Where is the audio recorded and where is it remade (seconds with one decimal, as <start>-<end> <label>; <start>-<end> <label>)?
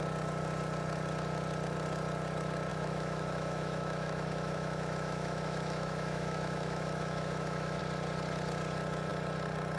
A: 0.0-2.7 recorded; 2.7-7.8 remade; 7.8-9.8 recorded